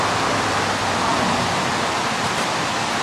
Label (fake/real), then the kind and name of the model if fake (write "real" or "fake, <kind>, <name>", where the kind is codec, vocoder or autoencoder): real